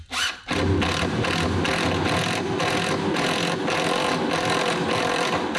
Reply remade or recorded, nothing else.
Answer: recorded